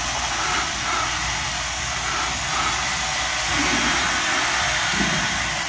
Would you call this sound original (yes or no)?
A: yes